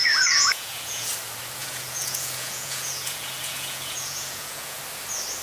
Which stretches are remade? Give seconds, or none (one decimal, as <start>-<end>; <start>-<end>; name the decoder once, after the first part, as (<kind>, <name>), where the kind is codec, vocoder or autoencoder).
0.0-1.1 (vocoder, Vocos); 1.6-4.8